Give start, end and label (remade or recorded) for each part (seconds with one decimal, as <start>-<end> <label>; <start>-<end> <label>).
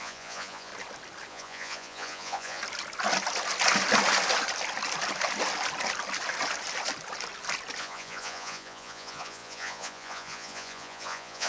0.0-0.7 remade; 0.7-1.3 recorded; 1.3-2.6 remade; 2.6-7.8 recorded; 7.8-11.5 remade